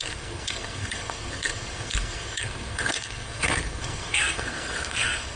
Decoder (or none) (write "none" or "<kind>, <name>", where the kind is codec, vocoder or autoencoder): codec, SNAC